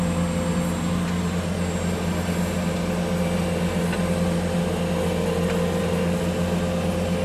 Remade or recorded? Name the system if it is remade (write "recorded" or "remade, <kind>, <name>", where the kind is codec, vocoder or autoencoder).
recorded